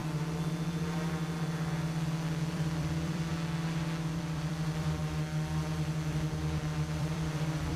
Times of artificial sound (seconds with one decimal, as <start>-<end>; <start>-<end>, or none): 2.5-3.3; 4.1-5.0; 7.0-7.8